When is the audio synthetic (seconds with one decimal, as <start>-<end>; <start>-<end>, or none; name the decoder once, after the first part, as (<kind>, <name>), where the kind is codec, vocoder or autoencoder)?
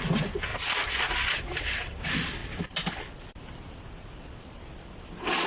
0.5-1.1 (vocoder, BigVGAN v2)